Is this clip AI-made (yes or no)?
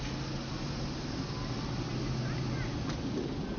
no